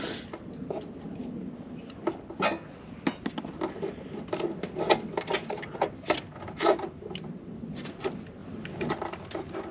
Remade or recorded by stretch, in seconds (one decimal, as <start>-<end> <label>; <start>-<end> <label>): 0.0-9.7 recorded